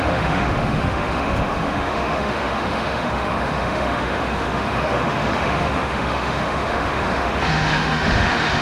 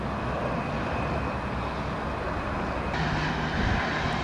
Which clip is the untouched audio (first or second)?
second